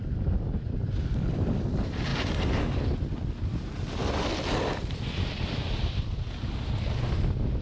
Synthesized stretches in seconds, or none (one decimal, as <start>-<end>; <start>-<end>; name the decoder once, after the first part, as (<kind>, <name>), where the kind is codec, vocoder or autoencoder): none